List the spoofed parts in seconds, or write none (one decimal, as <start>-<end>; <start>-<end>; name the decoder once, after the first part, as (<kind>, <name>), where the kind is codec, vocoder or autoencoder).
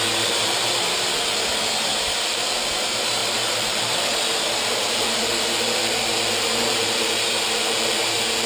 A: 0.0-1.1 (vocoder, BigVGAN v2); 2.2-8.5